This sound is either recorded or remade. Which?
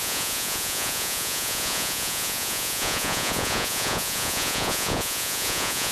remade